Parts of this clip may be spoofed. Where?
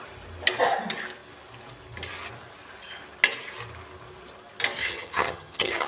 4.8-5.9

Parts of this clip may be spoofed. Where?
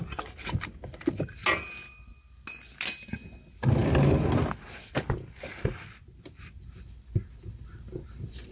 none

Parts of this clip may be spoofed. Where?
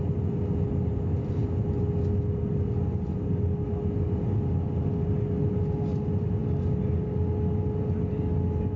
none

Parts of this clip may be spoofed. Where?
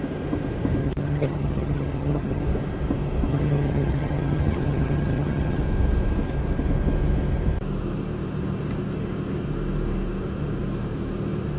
0.8-2.4; 3.3-5.6